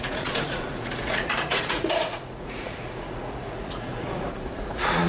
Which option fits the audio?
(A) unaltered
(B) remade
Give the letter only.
B